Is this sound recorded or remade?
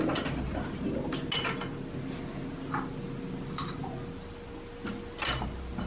recorded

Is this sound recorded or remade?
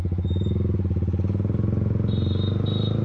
recorded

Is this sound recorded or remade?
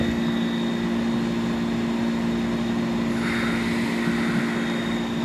recorded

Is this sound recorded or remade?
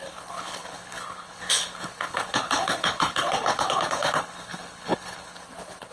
remade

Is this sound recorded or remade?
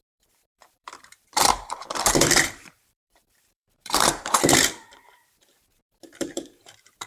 remade